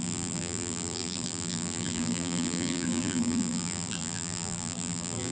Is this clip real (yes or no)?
no